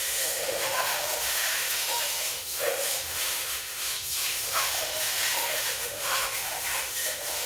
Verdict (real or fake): fake